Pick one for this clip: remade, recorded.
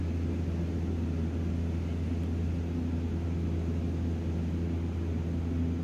recorded